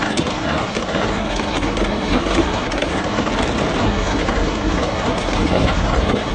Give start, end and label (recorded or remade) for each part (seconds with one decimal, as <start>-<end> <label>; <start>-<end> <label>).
0.0-3.3 remade; 3.3-3.8 recorded; 3.8-6.3 remade